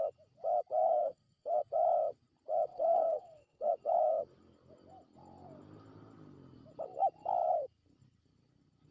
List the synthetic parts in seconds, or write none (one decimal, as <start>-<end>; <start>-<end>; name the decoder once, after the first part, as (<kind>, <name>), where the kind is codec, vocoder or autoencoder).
0.8-1.6 (codec, SNAC); 2.7-3.7